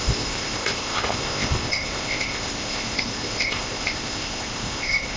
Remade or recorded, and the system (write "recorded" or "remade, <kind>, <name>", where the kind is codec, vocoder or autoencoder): remade, codec, ZipCodec